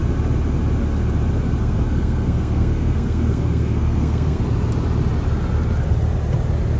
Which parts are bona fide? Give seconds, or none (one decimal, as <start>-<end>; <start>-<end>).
0.0-1.6; 4.4-6.8